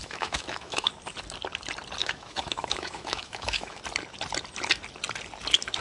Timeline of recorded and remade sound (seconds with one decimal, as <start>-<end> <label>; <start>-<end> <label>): 0.0-0.9 remade; 0.9-2.0 recorded; 2.0-3.8 remade; 3.8-5.8 recorded